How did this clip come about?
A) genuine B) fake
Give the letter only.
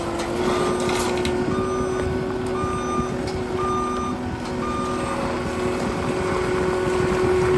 A